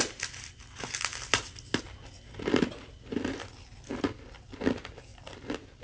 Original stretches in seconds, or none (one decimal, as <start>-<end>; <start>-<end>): 0.0-5.8